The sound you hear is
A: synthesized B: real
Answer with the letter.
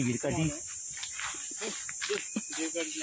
B